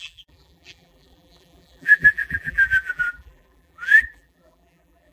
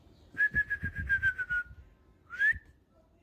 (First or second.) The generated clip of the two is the first